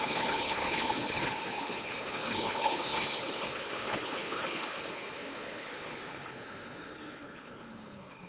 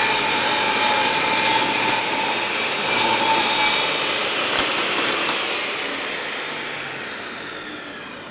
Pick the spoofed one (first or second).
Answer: first